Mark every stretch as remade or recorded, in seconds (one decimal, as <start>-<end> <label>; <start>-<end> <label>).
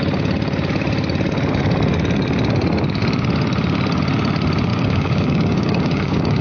0.0-4.7 recorded; 4.7-6.4 remade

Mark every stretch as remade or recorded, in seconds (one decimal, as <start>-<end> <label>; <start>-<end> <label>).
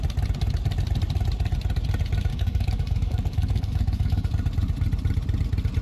0.0-2.3 recorded; 2.3-4.3 remade; 4.3-5.8 recorded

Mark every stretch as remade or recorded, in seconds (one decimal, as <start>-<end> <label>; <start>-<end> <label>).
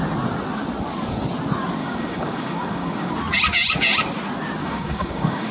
0.0-1.8 recorded; 1.8-3.1 remade; 3.1-4.6 recorded; 4.6-5.5 remade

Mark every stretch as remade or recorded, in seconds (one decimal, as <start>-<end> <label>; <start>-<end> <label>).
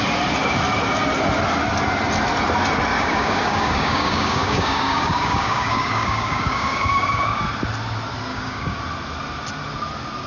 0.0-2.9 recorded; 2.9-7.4 remade; 7.4-8.3 recorded; 8.3-8.8 remade; 8.8-10.3 recorded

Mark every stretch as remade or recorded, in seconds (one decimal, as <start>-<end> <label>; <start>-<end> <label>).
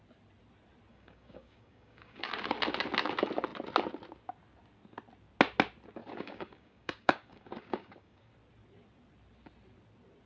0.0-0.9 recorded; 0.9-2.3 remade; 2.3-6.0 recorded; 6.0-8.3 remade; 8.3-10.3 recorded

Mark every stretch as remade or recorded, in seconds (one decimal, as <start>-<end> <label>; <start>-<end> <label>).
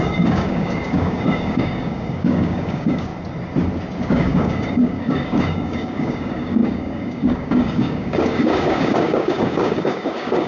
0.0-3.1 remade; 3.1-4.0 recorded; 4.0-10.5 remade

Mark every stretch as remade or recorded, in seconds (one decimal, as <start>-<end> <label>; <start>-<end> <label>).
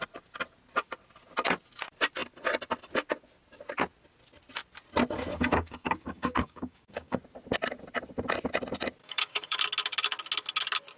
0.0-5.3 recorded; 5.3-7.2 remade; 7.2-9.0 recorded; 9.0-9.6 remade; 9.6-11.0 recorded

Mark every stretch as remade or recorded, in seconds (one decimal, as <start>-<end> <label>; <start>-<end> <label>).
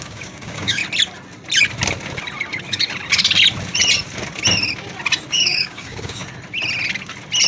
0.0-0.8 remade; 0.8-5.3 recorded; 5.3-6.2 remade; 6.2-7.5 recorded